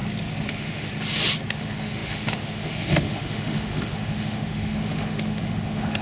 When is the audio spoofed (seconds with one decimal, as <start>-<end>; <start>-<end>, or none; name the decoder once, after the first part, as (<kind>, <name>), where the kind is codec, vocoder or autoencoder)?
0.5-0.9 (autoencoder, DAC-VAE); 1.5-6.0